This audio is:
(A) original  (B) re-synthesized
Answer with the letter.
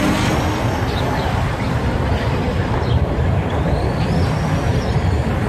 A